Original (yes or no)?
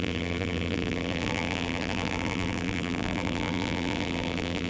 no